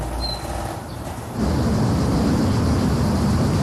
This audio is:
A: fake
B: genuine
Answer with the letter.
B